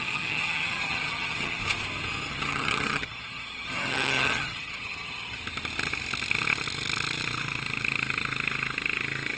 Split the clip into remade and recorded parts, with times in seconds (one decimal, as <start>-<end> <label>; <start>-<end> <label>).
0.0-1.6 remade; 1.6-2.3 recorded; 2.3-5.4 remade; 5.4-9.4 recorded